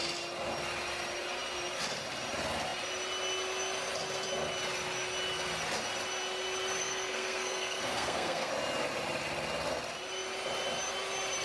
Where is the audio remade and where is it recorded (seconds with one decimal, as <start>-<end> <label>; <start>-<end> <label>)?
0.0-6.8 recorded; 6.8-8.5 remade; 8.5-11.4 recorded

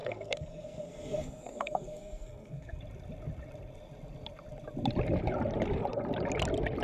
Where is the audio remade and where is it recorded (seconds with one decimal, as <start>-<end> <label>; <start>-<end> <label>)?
0.0-2.8 remade; 2.8-6.8 recorded

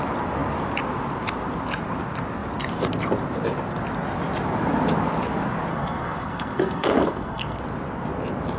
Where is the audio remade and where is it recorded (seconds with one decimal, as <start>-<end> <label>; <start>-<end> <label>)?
0.0-5.7 recorded; 5.7-7.6 remade; 7.6-8.6 recorded

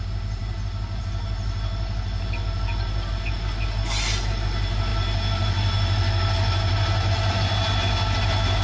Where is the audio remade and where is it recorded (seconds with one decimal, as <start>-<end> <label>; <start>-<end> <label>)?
0.0-8.6 recorded

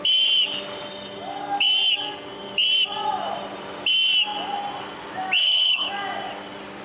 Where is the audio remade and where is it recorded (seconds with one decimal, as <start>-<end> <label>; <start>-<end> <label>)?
0.0-5.4 recorded; 5.4-5.9 remade; 5.9-6.8 recorded